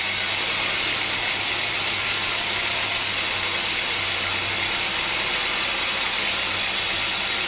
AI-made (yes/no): no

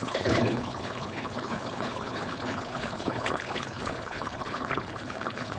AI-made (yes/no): yes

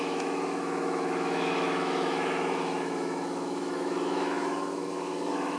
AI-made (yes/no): yes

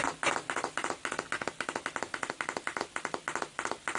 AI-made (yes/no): no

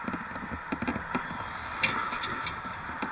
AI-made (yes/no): no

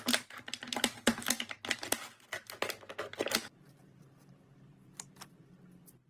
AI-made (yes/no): no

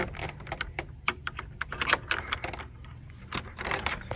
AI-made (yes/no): no